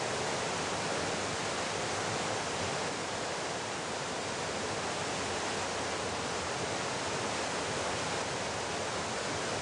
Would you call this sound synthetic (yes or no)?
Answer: no